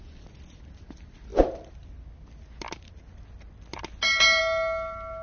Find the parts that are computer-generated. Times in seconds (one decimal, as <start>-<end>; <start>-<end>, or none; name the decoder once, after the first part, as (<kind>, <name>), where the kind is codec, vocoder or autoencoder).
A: none